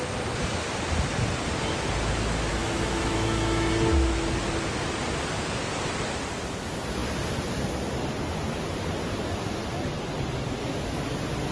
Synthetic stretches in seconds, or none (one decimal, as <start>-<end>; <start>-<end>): 2.5-3.7